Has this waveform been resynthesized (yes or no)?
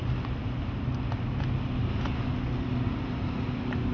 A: no